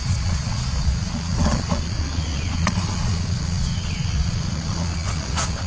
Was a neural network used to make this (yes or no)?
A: yes